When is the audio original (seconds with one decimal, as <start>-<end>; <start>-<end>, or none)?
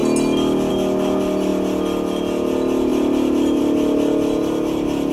0.0-5.1